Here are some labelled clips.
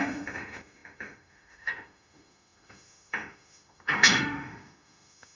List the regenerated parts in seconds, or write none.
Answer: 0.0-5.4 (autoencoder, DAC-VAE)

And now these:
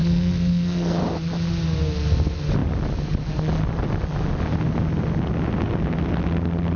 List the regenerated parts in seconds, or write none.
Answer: 0.0-1.0 (codec, SNAC)

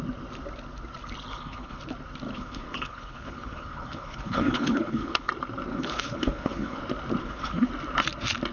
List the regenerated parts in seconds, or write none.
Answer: 1.3-1.8 (codec, HILCodec); 2.3-5.3; 5.7-6.8; 7.2-7.7

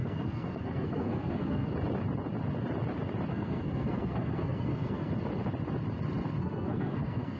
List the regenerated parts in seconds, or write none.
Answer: 0.0-1.7 (codec, SNAC); 3.3-5.1; 6.4-7.4

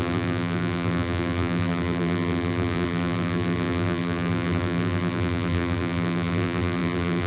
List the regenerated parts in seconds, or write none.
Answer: 0.0-7.3 (vocoder, BigVGAN v2)

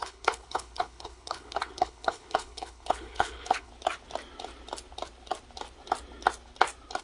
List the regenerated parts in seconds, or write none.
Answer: 0.0-3.7 (codec, HILCodec)